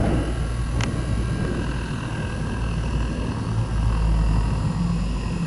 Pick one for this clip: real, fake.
real